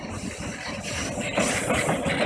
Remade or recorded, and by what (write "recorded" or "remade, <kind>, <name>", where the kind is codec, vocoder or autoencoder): recorded